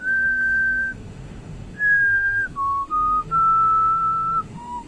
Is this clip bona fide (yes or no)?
no